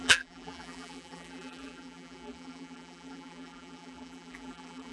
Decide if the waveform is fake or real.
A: fake